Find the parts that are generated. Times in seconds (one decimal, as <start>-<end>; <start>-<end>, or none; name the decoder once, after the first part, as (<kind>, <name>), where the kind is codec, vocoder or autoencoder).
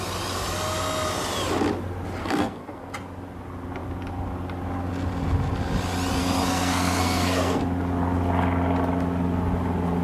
2.2-2.8 (codec, SNAC); 6.2-7.6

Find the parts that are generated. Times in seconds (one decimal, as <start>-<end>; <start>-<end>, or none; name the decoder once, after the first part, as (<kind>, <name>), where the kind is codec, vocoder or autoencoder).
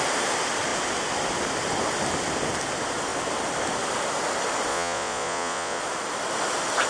4.7-5.8 (vocoder, Vocos)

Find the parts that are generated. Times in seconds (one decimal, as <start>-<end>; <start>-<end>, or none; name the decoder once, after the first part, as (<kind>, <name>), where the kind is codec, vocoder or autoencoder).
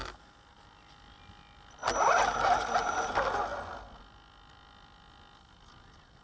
none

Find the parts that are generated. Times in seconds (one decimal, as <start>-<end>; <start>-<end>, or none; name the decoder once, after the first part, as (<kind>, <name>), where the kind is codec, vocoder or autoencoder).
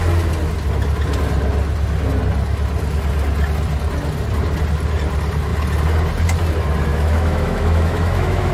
6.9-8.5 (autoencoder, DAC-VAE)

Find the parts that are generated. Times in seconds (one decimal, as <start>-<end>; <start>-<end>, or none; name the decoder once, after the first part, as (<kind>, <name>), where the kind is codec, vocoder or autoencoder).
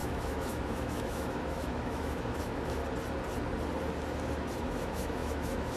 0.0-2.8 (autoencoder, DAC-VAE); 4.6-5.8